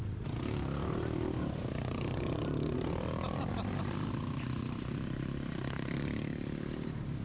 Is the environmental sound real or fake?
fake